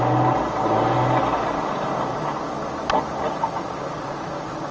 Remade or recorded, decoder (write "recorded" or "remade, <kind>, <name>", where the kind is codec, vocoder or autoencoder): recorded